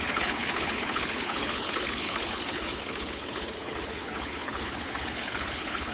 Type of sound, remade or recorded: remade